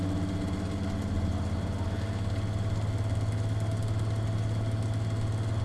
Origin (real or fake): real